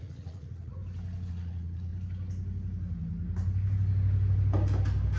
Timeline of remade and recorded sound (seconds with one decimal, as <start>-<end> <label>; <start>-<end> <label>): 0.0-0.8 remade; 0.8-1.3 recorded; 1.3-1.9 remade; 1.9-5.2 recorded